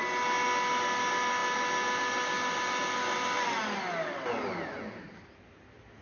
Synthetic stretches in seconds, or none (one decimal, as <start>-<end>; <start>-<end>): none